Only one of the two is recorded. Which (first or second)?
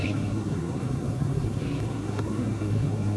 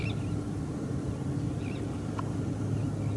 second